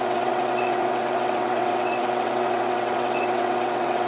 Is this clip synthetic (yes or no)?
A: yes